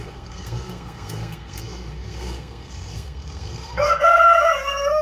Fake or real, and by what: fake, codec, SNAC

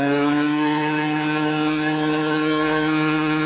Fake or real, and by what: fake, codec, SNAC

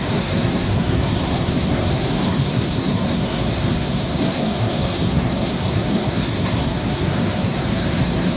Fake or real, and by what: fake, codec, SNAC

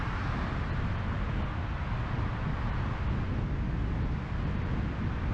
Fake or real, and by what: real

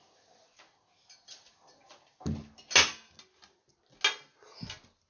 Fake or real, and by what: real